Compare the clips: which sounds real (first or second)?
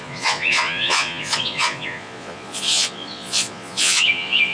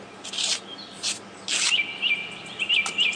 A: second